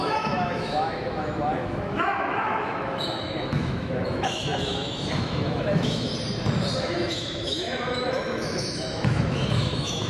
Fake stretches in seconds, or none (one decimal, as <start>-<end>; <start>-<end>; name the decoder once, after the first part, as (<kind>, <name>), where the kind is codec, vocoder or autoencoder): 0.0-6.1 (autoencoder, DAC-VAE); 6.8-10.1